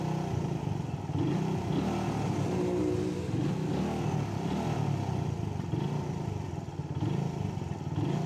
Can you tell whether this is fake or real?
real